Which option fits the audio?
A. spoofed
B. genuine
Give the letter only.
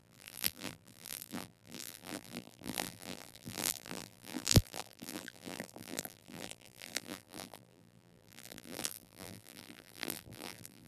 A